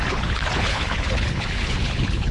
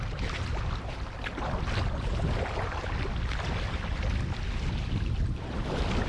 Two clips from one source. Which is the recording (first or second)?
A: second